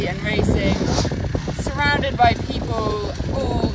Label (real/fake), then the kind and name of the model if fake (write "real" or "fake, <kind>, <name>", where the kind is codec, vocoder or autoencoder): real